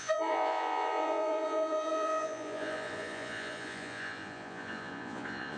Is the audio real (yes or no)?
no